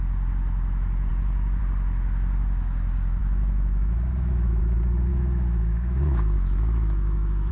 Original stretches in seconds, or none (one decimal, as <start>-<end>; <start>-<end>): 0.0-3.2; 4.6-5.1